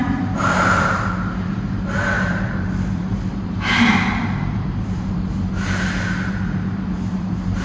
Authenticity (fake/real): fake